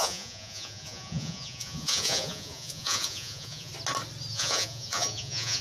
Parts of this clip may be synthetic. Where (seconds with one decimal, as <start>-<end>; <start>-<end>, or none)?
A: 0.0-3.7; 4.3-5.6